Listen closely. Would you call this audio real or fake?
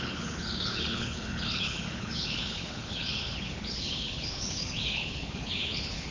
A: fake